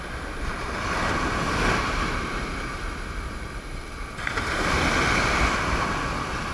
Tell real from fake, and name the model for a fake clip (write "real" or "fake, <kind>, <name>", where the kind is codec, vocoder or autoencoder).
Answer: real